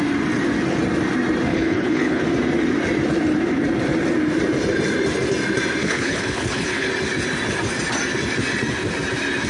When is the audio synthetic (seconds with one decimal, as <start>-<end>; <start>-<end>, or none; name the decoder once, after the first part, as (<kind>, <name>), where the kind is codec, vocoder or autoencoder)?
1.5-2.2 (codec, HILCodec); 5.8-6.9